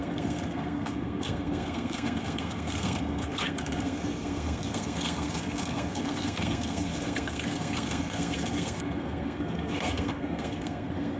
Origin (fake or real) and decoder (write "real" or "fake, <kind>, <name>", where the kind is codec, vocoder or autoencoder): fake, codec, SNAC